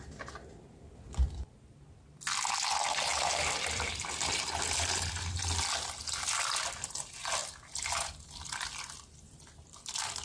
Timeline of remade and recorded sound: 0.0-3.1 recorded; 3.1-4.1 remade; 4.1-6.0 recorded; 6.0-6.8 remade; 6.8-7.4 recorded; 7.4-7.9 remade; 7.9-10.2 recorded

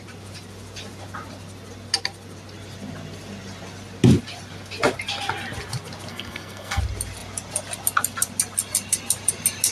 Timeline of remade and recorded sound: 0.0-6.1 recorded; 6.1-6.8 remade; 6.8-9.7 recorded

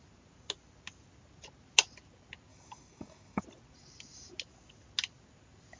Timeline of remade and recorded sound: 0.0-2.5 recorded; 2.5-3.4 remade; 3.4-5.8 recorded

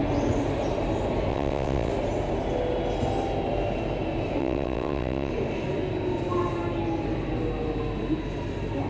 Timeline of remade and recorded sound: 0.0-1.3 recorded; 1.3-1.9 remade; 1.9-4.4 recorded; 4.4-5.3 remade; 5.3-8.9 recorded

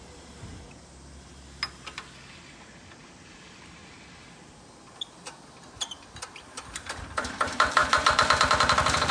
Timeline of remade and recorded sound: 0.0-0.5 remade; 0.5-3.0 recorded; 3.0-3.8 remade; 3.8-6.4 recorded; 6.4-9.1 remade